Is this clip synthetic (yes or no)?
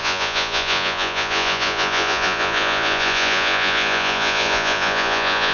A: yes